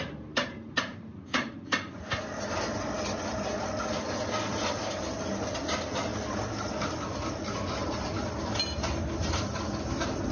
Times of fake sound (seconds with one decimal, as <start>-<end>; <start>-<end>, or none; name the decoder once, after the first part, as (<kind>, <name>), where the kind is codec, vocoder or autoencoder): none